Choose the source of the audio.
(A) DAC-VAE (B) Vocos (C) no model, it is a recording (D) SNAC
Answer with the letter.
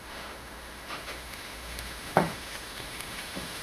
A